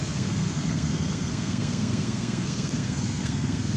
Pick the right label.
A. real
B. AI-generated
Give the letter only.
B